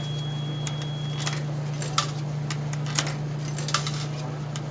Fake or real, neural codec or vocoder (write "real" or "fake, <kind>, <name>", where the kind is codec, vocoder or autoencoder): real